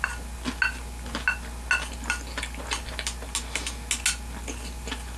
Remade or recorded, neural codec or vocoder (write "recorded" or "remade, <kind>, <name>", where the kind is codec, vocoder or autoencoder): recorded